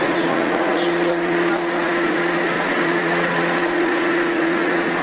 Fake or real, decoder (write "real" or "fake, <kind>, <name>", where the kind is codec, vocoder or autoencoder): fake, vocoder, Vocos